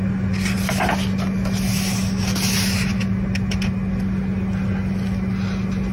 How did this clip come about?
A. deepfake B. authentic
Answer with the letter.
B